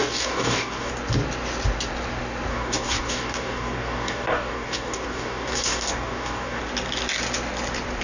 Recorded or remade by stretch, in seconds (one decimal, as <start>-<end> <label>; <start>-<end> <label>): 0.0-0.9 remade; 0.9-2.5 recorded; 2.5-6.6 remade; 6.6-8.0 recorded